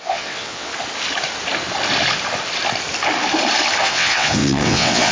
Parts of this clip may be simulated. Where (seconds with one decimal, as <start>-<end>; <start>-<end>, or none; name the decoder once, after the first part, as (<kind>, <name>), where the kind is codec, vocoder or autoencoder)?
0.0-0.7 (vocoder, WaveNeXt); 3.8-5.1